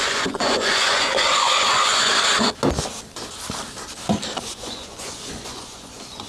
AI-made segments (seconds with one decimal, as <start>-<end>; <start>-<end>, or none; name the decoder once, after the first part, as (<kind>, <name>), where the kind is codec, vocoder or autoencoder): 0.0-2.1 (vocoder, Vocos); 4.4-6.3